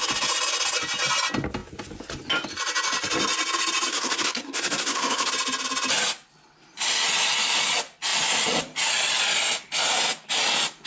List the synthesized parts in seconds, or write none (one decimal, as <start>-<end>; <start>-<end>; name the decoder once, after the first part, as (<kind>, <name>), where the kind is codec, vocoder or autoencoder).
3.9-5.3 (codec, SNAC)